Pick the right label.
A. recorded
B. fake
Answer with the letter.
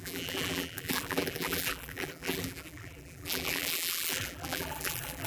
B